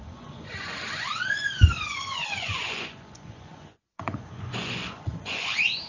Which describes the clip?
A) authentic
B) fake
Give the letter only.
B